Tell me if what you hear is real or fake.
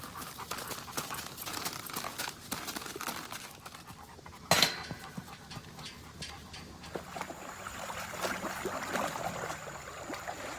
real